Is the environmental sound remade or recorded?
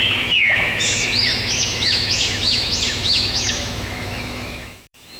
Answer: remade